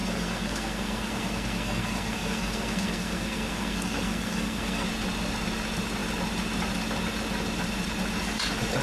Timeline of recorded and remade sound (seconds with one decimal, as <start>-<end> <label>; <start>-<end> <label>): 0.0-4.9 remade; 4.9-8.8 recorded